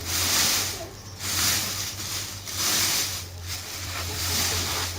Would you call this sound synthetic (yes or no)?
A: yes